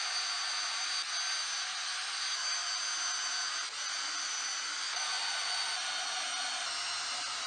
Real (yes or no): yes